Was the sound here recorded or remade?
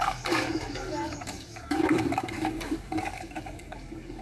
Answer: remade